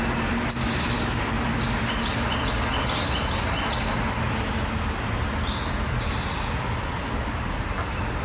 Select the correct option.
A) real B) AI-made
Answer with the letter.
A